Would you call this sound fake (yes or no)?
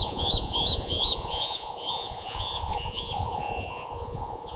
yes